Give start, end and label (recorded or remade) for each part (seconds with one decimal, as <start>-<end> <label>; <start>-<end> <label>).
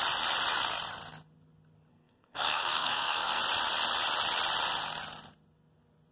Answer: 0.0-1.9 recorded; 1.9-3.4 remade; 3.4-6.1 recorded